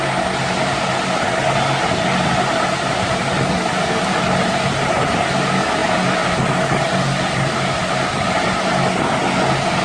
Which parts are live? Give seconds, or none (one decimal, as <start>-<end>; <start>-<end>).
0.0-0.4; 1.4-2.1; 5.3-9.8